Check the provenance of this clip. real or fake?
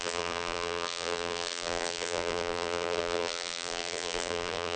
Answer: fake